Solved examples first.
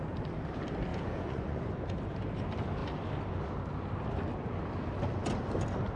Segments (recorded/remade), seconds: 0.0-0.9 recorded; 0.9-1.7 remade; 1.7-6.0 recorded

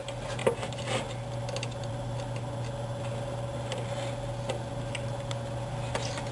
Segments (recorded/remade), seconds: 0.0-6.3 recorded

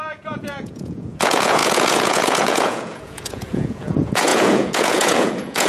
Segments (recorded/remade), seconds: 0.0-5.7 remade

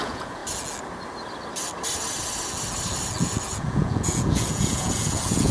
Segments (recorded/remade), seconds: 0.0-0.4 remade; 0.4-3.4 recorded; 3.4-5.5 remade